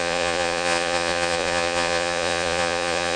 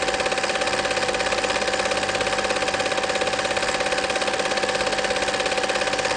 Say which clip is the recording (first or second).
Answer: second